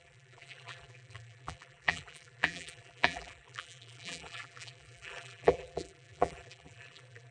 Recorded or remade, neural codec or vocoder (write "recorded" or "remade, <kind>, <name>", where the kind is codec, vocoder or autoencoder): remade, vocoder, BigVGAN v2